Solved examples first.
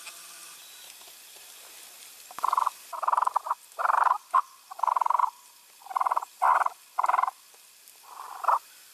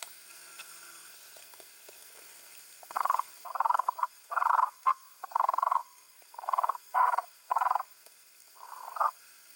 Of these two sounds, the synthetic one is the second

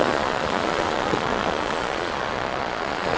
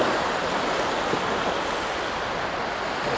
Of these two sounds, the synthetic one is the first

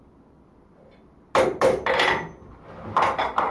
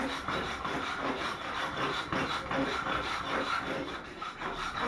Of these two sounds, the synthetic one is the second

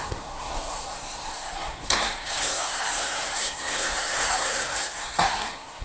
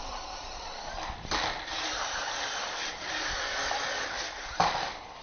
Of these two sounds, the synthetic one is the first